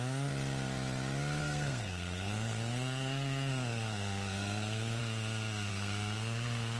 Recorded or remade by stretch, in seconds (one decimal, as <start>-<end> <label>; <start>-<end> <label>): 0.0-1.4 recorded; 1.4-5.0 remade; 5.0-5.7 recorded; 5.7-6.8 remade